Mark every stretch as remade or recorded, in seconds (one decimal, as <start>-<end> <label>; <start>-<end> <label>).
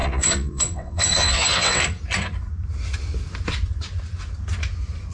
0.0-1.8 remade; 1.8-5.1 recorded